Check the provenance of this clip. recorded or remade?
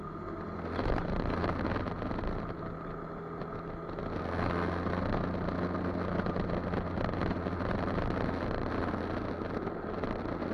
recorded